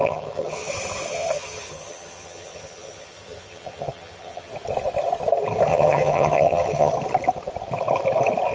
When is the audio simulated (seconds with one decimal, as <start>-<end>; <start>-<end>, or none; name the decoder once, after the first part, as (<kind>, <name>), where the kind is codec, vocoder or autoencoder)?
0.0-0.7 (vocoder, HiFi-GAN); 1.1-4.5; 5.7-6.9